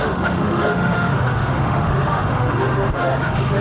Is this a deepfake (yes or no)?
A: yes